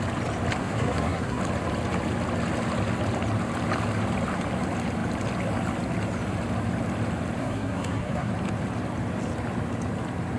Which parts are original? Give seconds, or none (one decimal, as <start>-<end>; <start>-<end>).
0.0-0.6; 1.4-7.4; 8.3-10.4

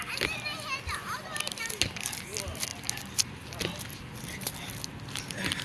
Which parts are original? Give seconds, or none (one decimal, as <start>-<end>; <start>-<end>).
0.0-5.6

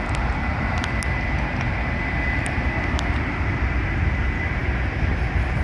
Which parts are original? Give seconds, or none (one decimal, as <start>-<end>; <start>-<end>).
0.0-5.6